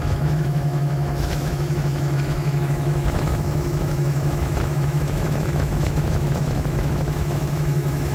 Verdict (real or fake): fake